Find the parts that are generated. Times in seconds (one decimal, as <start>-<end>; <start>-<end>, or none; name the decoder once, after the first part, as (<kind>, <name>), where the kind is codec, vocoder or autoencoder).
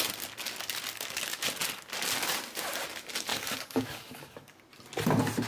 3.3-4.6 (codec, DAC)